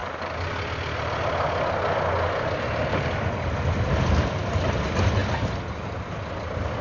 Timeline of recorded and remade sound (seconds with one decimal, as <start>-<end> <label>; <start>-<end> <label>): 0.0-6.8 recorded